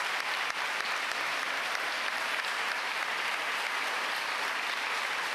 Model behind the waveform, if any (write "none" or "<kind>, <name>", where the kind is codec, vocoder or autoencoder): none